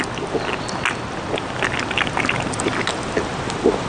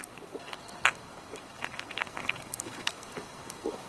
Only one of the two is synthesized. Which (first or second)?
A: second